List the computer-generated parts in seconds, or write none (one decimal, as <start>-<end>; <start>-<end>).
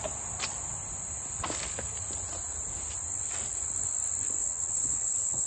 4.4-5.5